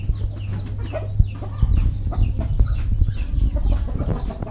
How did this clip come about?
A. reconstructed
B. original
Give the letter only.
B